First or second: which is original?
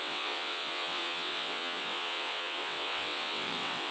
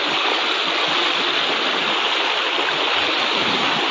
second